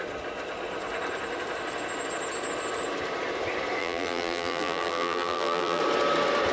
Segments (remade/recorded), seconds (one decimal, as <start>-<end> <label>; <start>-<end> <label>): 0.0-3.8 recorded; 3.8-5.8 remade; 5.8-6.5 recorded